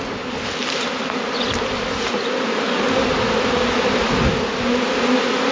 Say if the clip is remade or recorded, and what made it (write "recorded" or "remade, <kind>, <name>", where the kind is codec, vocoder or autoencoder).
recorded